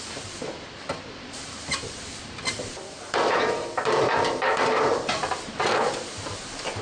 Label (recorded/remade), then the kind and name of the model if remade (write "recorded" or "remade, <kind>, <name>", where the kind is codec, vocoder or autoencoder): remade, vocoder, BigVGAN v2